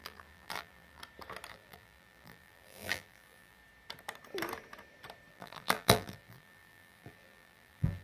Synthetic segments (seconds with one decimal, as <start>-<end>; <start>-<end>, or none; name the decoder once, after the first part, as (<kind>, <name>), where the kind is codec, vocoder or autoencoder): 0.0-1.0 (vocoder, BigVGAN v2); 1.5-3.6; 5.3-8.0